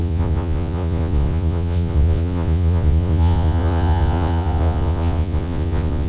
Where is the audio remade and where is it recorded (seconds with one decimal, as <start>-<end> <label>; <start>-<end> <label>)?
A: 0.0-6.1 remade